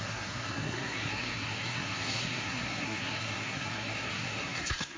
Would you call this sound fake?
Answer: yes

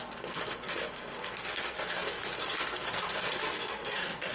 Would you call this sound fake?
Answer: yes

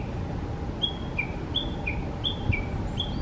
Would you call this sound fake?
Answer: no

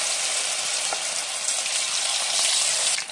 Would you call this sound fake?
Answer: no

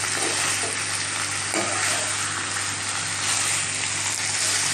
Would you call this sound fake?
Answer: no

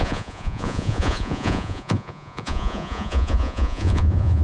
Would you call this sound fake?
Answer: yes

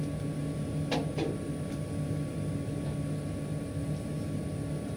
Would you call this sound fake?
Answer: no